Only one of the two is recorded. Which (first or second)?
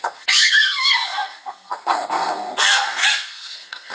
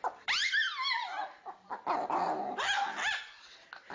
second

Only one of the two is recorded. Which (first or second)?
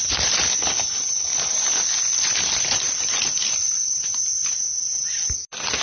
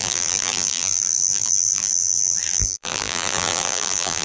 first